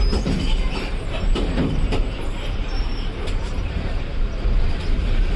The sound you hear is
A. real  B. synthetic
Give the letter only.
B